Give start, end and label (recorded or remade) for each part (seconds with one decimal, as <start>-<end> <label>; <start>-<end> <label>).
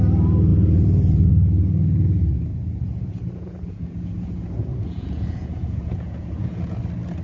0.0-0.5 recorded; 0.5-1.3 remade; 1.3-2.5 recorded; 2.5-6.8 remade; 6.8-7.2 recorded